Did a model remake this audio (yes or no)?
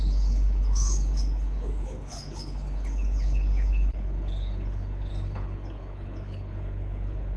yes